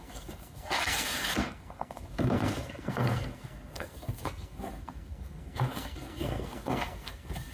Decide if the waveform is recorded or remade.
remade